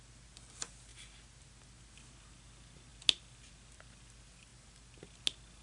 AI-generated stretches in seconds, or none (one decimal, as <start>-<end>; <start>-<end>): none